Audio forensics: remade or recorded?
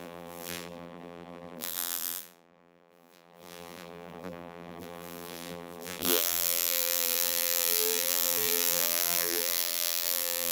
remade